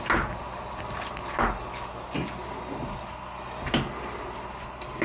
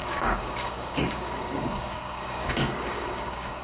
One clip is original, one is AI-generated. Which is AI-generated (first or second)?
second